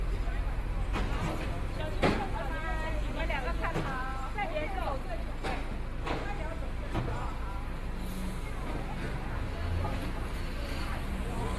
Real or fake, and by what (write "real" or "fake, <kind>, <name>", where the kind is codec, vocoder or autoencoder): real